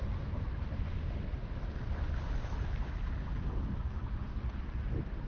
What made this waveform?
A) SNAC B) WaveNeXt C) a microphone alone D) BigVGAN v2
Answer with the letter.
C